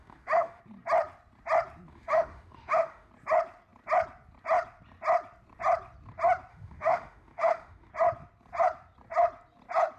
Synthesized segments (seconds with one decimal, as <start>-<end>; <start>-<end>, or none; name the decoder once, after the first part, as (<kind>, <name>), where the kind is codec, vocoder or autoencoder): 0.0-0.6 (autoencoder, DAC-VAE); 1.9-3.1; 6.5-7.9